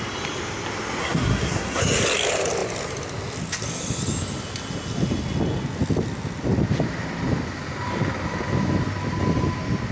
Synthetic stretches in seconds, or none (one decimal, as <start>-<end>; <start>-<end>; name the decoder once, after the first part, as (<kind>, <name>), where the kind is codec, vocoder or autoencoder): 1.0-1.8 (codec, SNAC)